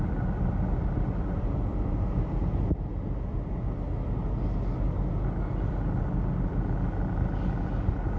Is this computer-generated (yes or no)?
no